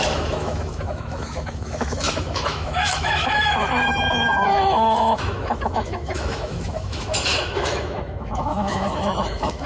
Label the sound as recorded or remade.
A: remade